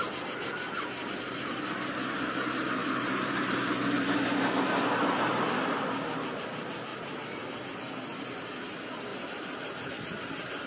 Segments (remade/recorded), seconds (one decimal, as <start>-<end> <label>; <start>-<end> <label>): 0.0-2.8 recorded; 2.8-3.5 remade; 3.5-6.9 recorded; 6.9-8.3 remade; 8.3-9.1 recorded; 9.1-9.9 remade; 9.9-10.7 recorded